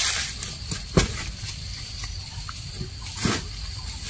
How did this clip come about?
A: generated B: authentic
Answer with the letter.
B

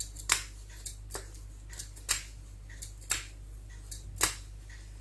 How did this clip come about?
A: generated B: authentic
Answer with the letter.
B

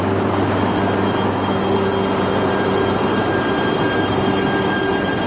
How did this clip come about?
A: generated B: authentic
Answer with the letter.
B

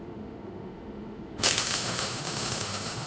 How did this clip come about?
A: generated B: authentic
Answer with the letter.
A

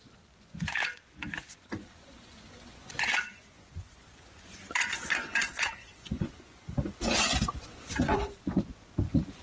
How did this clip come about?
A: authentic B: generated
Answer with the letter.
B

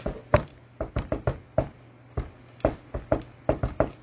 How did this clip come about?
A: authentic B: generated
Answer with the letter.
A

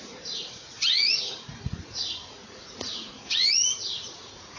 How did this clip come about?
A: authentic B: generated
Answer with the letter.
B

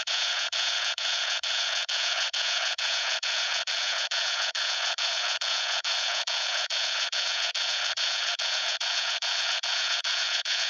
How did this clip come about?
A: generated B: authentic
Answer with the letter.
A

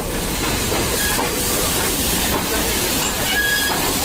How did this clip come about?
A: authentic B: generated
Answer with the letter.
B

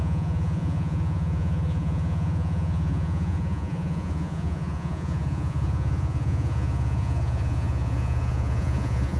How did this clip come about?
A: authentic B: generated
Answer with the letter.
B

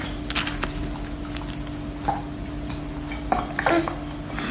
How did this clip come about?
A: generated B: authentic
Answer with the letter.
B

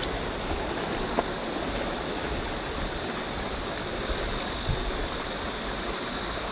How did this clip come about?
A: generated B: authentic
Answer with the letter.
B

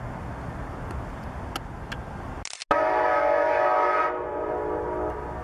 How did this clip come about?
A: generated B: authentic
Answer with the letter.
B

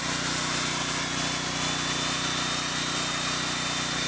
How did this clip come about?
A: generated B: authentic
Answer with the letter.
B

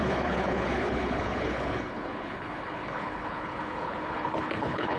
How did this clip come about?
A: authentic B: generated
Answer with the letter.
B